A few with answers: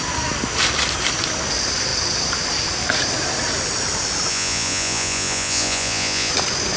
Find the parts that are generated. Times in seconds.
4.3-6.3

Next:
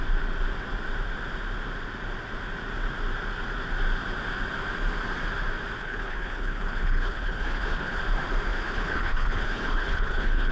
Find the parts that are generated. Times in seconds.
5.8-8.0; 8.5-10.5

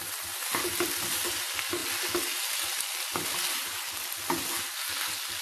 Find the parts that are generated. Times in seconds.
none

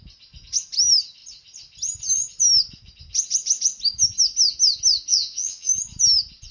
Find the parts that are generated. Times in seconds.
5.1-5.7

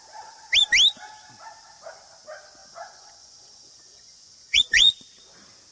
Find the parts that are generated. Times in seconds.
2.6-4.9

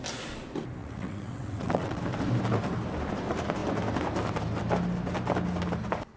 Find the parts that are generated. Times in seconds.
0.8-2.0

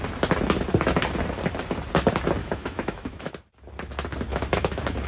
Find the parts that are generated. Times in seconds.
2.4-3.3; 4.3-5.1